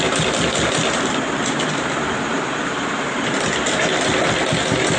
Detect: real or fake real